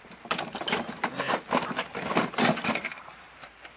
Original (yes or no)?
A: no